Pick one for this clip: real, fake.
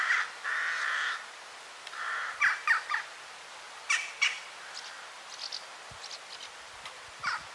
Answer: real